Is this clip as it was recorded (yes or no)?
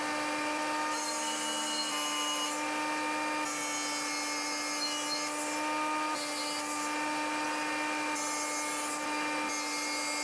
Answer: yes